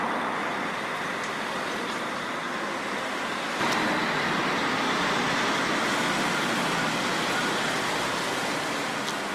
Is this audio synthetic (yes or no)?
no